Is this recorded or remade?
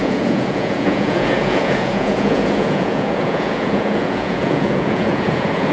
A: remade